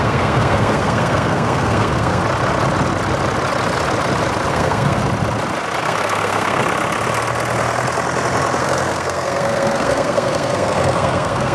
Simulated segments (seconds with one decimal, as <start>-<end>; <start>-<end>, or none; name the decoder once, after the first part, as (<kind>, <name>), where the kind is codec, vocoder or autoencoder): 0.0-2.2 (codec, SNAC); 4.5-5.0; 5.8-6.6; 8.6-11.5